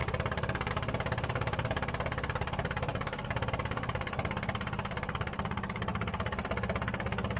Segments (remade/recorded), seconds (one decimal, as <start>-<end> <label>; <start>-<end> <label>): 0.0-5.9 remade; 5.9-7.4 recorded